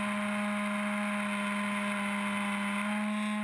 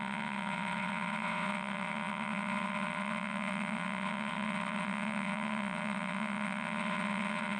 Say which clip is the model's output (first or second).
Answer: second